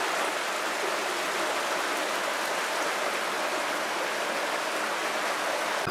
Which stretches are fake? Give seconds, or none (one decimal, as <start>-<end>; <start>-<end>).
1.0-4.0